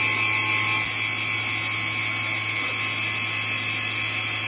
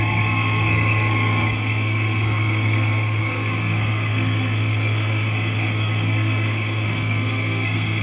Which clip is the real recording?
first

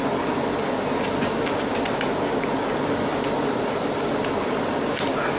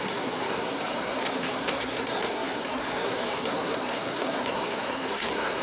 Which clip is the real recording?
first